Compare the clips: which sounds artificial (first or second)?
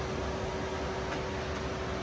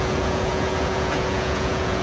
second